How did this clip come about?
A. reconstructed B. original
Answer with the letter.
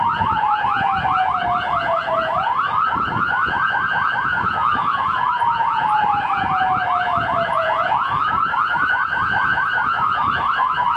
A